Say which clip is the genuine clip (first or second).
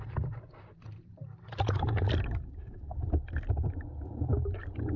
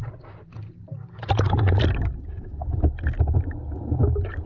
second